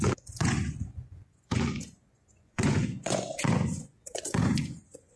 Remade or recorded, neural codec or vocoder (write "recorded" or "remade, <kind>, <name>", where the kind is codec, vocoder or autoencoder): remade, vocoder, Vocos